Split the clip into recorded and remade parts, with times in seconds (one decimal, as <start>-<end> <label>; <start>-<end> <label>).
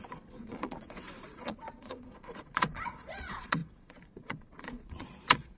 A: 0.0-5.6 remade